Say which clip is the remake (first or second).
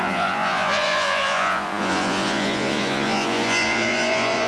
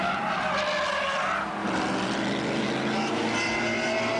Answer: first